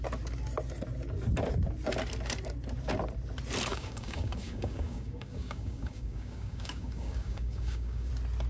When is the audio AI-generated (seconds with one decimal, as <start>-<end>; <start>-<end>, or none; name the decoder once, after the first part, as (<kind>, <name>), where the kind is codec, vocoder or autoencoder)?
3.7-8.1 (codec, DAC)

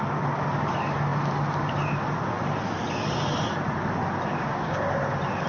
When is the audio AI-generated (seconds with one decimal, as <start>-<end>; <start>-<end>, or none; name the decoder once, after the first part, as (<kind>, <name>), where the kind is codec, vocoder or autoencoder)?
4.4-4.9 (codec, DAC)